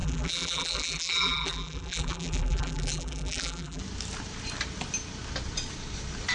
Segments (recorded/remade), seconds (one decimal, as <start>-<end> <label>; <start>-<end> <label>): 0.0-3.8 remade; 3.8-6.3 recorded